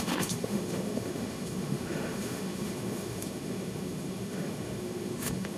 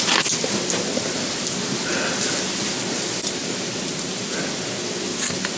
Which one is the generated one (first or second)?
first